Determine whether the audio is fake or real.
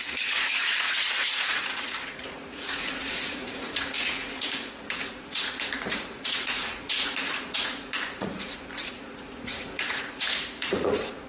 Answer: fake